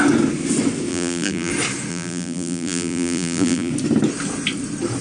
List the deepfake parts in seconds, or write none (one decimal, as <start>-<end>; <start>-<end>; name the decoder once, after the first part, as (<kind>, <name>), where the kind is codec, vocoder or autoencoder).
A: 0.9-1.5 (vocoder, BigVGAN v2); 1.9-3.7